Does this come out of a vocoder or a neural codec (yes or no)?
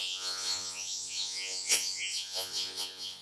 yes